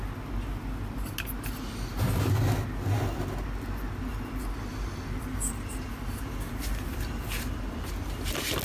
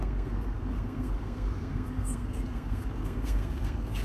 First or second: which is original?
first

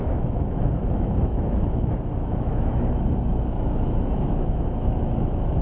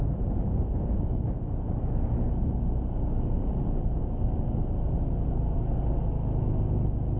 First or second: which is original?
second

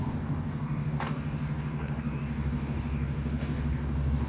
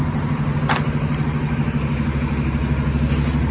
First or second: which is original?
second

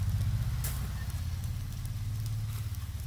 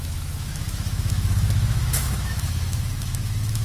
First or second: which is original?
first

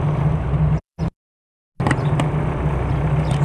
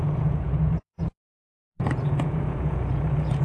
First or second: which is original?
first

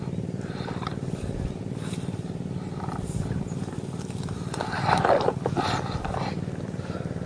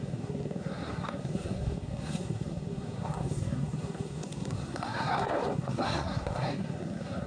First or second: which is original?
first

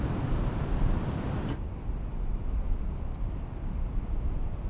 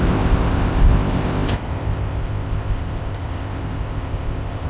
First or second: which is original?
first